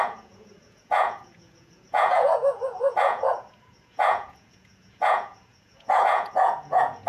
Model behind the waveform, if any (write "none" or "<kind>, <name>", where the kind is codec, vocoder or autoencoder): vocoder, Vocos